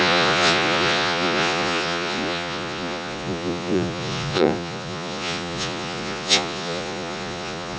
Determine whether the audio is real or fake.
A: fake